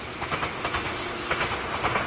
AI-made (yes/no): no